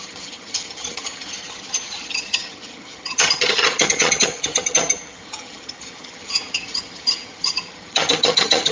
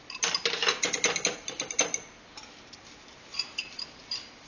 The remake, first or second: first